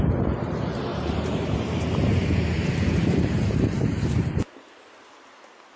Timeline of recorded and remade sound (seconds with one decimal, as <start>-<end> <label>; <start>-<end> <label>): 0.0-0.9 recorded; 0.9-4.4 remade; 4.4-5.8 recorded